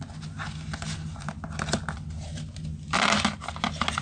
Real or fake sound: real